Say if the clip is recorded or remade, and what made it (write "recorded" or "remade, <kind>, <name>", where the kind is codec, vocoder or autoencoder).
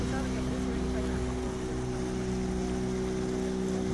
recorded